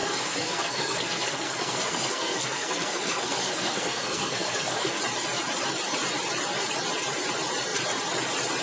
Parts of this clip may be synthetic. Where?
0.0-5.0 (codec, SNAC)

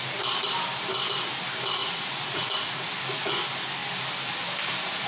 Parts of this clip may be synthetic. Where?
1.8-2.9 (vocoder, Vocos)